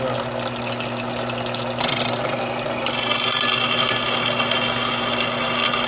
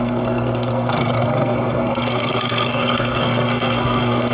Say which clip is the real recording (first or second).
first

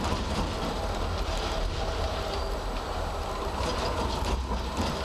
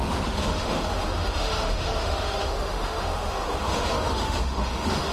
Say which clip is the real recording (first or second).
first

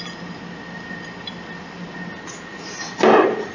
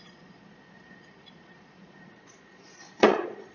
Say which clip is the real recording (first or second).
first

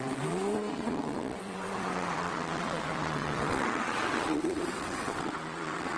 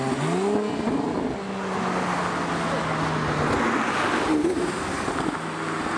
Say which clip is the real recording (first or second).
second